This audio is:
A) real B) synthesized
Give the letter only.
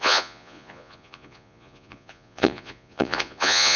B